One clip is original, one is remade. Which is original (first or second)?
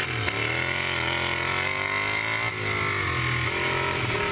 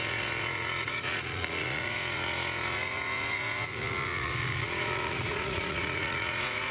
first